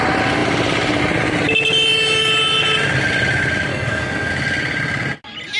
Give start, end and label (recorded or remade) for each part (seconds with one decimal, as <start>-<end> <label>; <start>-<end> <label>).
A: 0.0-3.7 recorded; 3.7-4.3 remade; 4.3-5.6 recorded